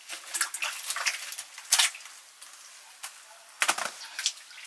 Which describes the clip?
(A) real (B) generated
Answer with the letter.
A